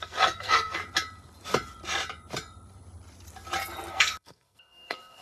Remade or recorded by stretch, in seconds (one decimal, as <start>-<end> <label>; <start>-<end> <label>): 0.0-0.8 remade; 0.8-3.9 recorded; 3.9-5.2 remade